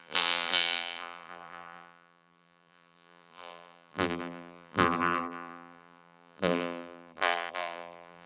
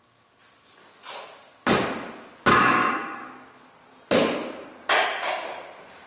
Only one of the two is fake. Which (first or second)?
first